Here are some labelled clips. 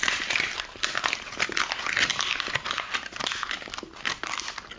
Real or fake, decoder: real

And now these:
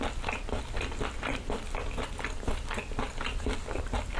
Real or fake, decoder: real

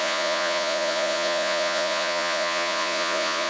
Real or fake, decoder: fake, vocoder, Vocos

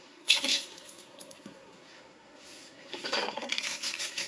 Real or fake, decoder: fake, codec, SNAC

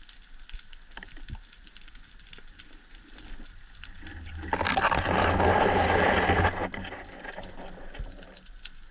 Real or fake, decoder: real